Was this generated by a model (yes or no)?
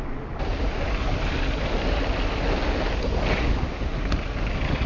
no